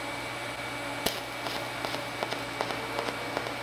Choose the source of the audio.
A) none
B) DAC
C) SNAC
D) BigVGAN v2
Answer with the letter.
A